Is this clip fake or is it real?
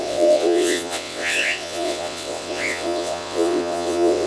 fake